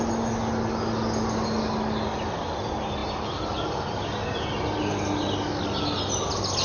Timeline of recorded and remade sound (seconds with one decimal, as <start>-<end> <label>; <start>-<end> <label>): 0.0-6.6 recorded